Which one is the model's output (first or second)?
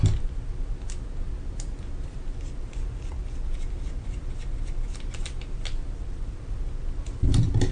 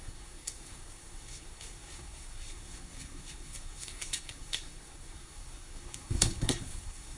second